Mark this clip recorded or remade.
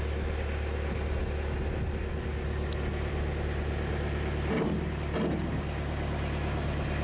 recorded